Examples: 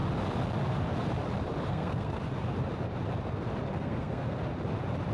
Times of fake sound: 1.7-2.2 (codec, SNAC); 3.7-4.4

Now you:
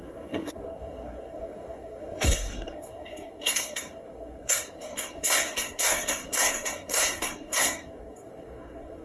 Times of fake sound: 0.0-9.0 (codec, SNAC)

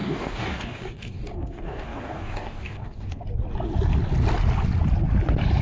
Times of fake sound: 0.0-3.2 (codec, DAC)

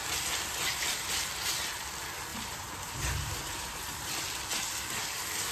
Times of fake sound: 2.3-4.2 (vocoder, BigVGAN v2)

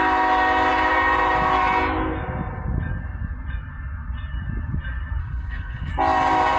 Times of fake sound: 5.2-5.9 (codec, HILCodec)

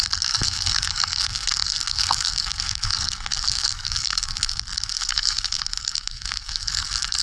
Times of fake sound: 0.0-7.2 (codec, SNAC)

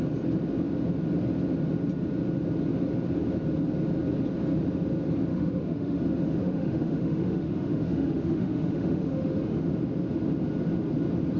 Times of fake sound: 5.3-6.0 (autoencoder, DAC-VAE); 6.4-9.7

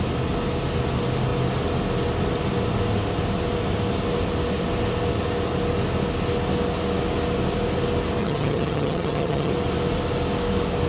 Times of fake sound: 8.2-9.5 (vocoder, HiFi-GAN)